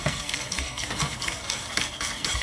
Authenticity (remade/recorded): remade